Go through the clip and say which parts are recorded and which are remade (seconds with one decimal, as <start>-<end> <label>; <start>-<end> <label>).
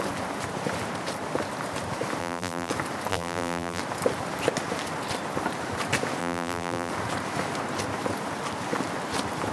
0.0-2.2 recorded; 2.2-2.7 remade; 2.7-3.1 recorded; 3.1-3.8 remade; 3.8-6.2 recorded; 6.2-6.9 remade; 6.9-9.5 recorded